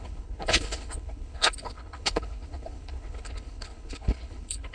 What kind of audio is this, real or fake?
fake